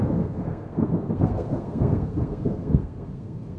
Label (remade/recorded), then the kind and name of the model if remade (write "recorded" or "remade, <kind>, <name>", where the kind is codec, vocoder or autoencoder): remade, codec, SNAC